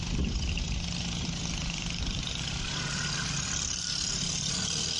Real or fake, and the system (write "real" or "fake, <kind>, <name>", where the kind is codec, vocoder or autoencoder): real